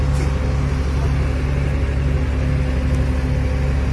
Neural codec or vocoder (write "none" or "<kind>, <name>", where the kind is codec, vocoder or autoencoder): none